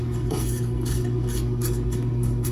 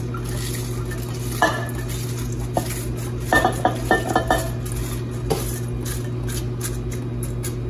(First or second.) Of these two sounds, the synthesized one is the first